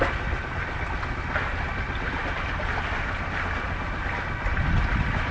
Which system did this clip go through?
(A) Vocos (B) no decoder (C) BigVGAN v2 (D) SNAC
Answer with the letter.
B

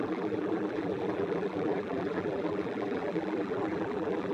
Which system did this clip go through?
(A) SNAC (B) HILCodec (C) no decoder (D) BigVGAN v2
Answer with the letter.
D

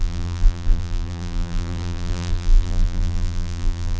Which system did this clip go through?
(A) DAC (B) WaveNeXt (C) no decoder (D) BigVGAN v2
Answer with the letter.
D